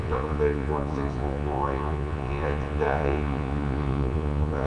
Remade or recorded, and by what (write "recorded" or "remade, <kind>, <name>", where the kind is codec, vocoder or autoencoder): remade, vocoder, Vocos